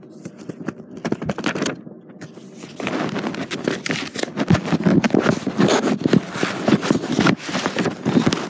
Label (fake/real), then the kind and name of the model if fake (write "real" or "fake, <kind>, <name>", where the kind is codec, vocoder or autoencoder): real